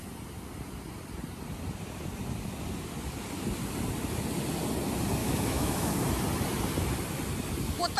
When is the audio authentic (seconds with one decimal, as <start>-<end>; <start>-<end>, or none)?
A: 0.0-5.2; 6.0-8.0